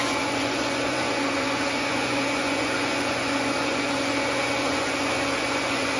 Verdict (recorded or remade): remade